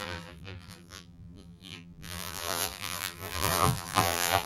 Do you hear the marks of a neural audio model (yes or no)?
yes